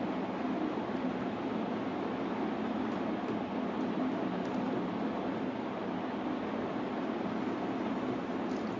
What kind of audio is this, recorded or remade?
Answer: recorded